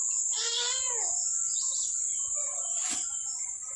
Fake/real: real